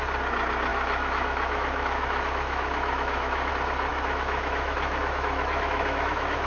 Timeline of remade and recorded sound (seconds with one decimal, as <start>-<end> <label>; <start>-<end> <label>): 0.0-0.7 recorded; 0.7-3.5 remade; 3.5-3.9 recorded; 3.9-6.5 remade